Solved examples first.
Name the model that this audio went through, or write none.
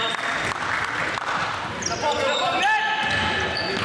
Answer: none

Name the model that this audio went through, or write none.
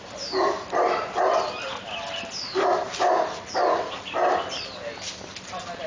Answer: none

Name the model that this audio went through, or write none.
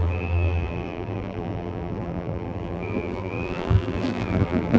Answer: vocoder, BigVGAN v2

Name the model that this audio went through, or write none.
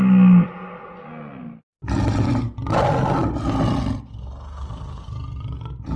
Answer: none